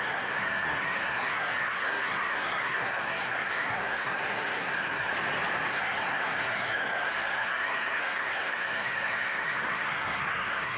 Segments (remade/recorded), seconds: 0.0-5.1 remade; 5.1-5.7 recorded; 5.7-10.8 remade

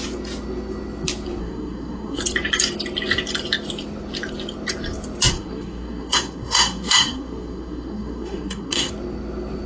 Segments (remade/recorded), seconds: 0.0-1.4 recorded; 1.4-2.2 remade; 2.2-5.3 recorded; 5.3-8.9 remade; 8.9-9.7 recorded

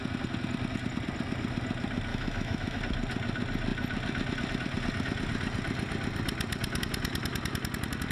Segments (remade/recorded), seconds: 0.0-2.1 recorded; 2.1-2.8 remade; 2.8-8.1 recorded

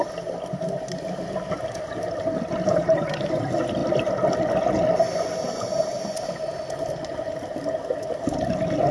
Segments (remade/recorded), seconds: 0.0-8.9 recorded